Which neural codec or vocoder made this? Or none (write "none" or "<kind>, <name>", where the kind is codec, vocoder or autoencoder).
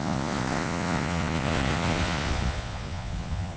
vocoder, Vocos